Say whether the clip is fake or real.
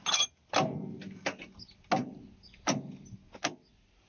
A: real